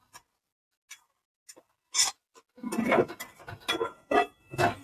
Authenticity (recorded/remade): recorded